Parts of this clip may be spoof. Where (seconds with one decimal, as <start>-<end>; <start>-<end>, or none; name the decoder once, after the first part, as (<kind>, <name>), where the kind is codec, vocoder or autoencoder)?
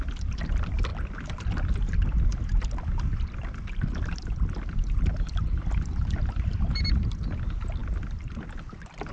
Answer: none